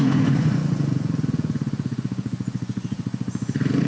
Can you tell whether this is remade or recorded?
remade